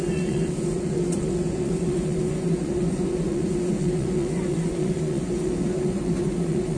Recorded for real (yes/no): no